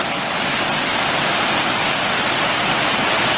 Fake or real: real